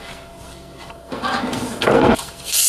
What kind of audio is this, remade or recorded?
remade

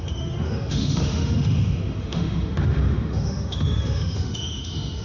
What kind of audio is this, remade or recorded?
remade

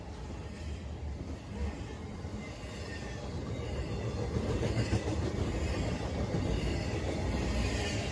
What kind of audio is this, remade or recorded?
recorded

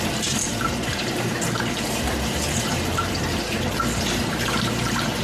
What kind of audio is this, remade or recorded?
remade